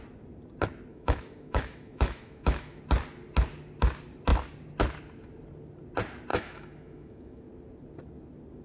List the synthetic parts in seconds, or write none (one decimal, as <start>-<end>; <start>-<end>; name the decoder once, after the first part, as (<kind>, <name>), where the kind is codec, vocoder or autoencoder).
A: 0.9-2.8 (autoencoder, DAC-VAE); 6.3-7.4